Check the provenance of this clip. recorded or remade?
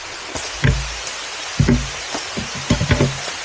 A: recorded